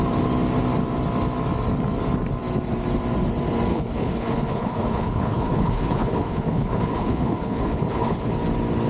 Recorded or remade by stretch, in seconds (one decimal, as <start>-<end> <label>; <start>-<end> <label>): 0.0-3.7 recorded; 3.7-8.3 remade; 8.3-8.9 recorded